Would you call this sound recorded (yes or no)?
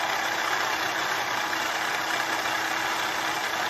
yes